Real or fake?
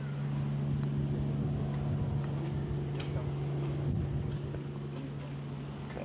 real